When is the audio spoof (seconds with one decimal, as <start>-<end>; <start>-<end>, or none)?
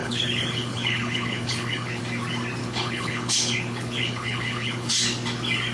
0.0-2.0; 2.6-4.9